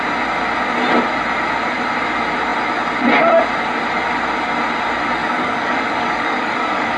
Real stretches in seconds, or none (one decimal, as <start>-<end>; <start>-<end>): 0.0-5.2